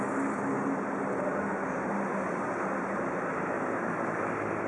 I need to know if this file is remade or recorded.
recorded